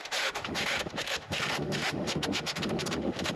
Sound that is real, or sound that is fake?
fake